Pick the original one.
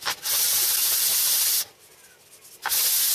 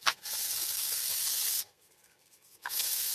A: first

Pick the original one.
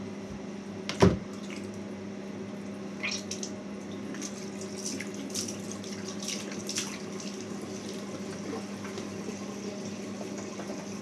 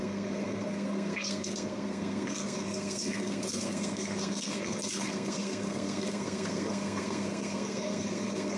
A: first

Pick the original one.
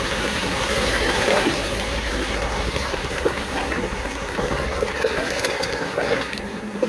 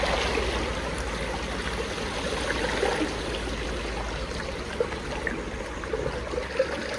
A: second